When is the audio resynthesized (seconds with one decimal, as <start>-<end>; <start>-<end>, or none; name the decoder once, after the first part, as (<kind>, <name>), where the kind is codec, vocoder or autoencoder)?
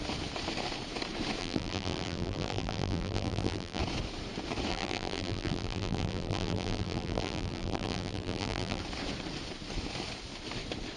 1.4-3.8 (vocoder, BigVGAN v2); 4.7-8.8